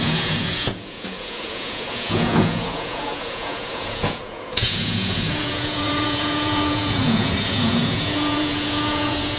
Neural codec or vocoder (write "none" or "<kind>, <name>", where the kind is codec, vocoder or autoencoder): vocoder, Vocos